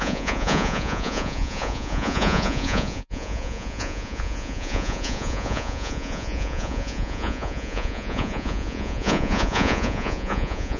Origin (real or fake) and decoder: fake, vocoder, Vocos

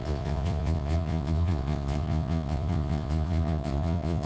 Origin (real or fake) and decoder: fake, vocoder, Vocos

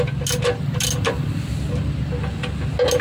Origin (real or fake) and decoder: real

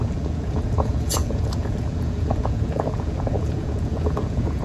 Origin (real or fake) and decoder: fake, vocoder, Vocos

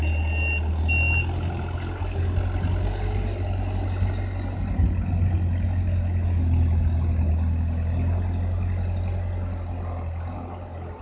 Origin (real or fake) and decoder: real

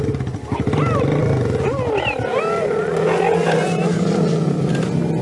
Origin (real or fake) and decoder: real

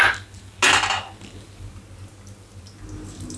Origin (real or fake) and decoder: real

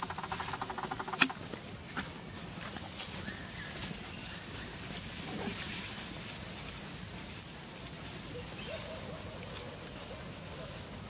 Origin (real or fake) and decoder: real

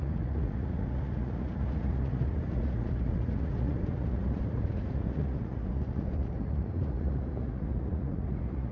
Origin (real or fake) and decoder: fake, vocoder, Vocos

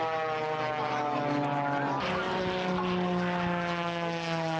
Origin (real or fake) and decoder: real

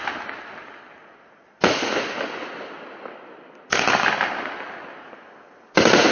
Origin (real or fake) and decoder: real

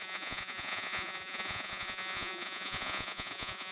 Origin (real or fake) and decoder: fake, vocoder, Vocos